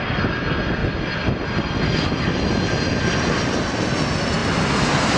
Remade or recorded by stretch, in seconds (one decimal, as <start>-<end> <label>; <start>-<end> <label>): 0.0-5.2 recorded